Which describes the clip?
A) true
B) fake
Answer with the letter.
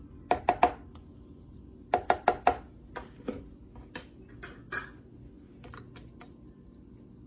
A